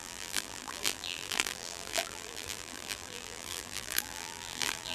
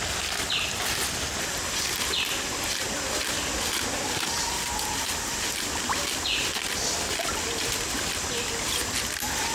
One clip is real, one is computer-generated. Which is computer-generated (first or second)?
first